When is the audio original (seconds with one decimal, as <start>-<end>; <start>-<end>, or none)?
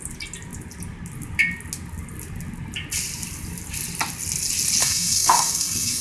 0.0-4.8